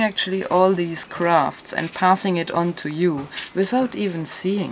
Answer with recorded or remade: recorded